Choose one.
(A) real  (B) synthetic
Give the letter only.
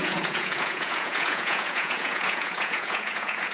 B